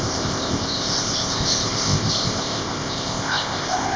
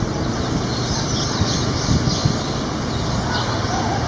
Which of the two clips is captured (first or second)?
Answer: second